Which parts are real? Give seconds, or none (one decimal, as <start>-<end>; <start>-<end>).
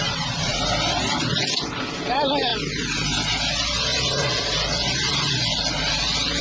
0.0-6.4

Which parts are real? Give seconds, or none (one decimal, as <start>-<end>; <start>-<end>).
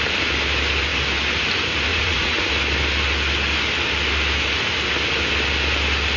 0.0-1.9; 2.5-6.2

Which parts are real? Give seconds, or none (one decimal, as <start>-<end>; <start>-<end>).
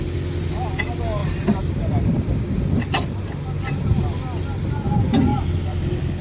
0.0-6.2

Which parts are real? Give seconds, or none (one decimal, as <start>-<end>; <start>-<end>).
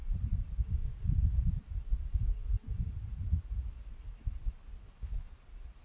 0.0-4.8; 5.3-5.8